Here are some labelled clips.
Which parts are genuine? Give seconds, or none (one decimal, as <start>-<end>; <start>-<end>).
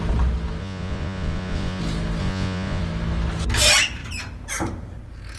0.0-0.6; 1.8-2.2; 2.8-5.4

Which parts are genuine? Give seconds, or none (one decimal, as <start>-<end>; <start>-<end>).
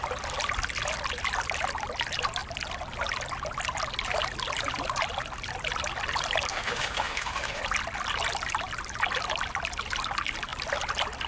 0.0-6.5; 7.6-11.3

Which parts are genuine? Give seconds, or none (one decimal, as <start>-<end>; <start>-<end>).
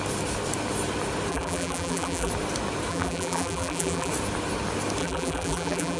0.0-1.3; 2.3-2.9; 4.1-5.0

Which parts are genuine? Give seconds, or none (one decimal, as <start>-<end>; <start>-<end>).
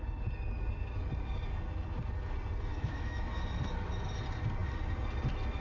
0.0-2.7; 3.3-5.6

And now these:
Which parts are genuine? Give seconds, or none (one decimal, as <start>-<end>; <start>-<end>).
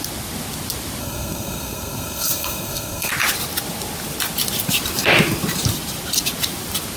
0.0-1.0; 3.1-7.0